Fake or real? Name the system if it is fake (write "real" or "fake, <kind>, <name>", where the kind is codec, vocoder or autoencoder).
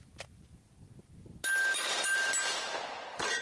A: real